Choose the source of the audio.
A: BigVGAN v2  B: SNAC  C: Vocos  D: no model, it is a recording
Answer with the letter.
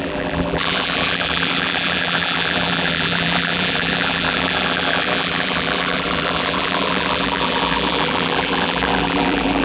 A